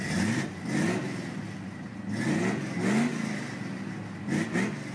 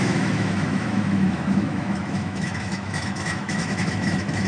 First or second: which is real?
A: first